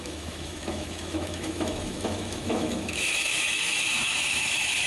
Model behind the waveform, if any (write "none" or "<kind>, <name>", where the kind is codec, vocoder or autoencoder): autoencoder, DAC-VAE